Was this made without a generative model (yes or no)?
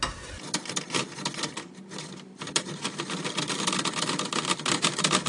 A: yes